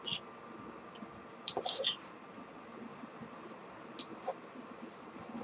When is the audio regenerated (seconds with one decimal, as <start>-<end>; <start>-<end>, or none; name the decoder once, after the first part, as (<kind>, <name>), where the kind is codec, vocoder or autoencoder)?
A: 1.3-2.5 (vocoder, BigVGAN v2); 2.9-4.0